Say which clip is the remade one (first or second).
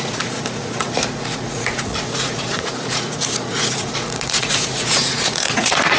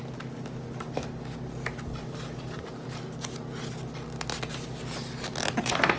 first